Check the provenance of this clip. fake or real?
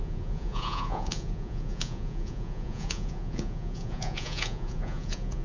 fake